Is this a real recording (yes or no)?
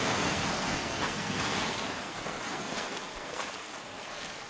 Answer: no